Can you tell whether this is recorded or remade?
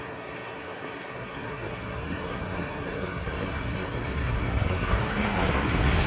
remade